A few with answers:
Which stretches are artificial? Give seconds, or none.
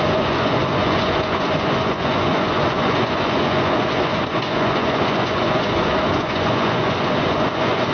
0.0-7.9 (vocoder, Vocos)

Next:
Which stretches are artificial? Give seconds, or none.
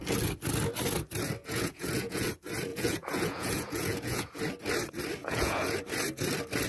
1.4-2.3 (vocoder, Vocos); 2.7-4.4; 5.2-5.8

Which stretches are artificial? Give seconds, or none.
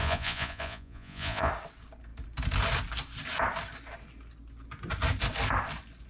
0.0-1.5 (vocoder, Vocos)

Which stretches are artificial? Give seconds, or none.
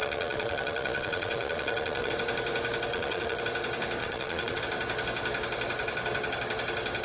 0.0-2.1 (vocoder, Vocos); 2.9-3.4; 4.0-4.6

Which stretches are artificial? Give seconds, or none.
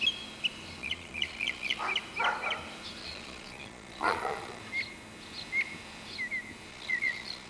0.8-1.8 (vocoder, Vocos); 3.0-4.6; 6.7-7.5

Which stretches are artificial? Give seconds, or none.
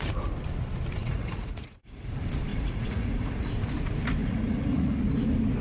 1.0-2.1 (vocoder, Vocos); 2.5-3.5; 4.2-5.0